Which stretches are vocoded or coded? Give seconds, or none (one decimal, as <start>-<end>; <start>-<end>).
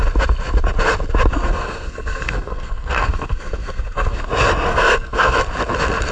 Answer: 1.3-4.3; 4.7-5.4